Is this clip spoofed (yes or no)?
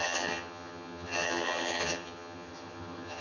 yes